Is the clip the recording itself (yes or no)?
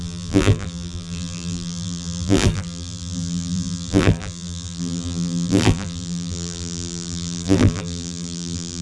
no